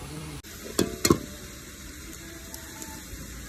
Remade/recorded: recorded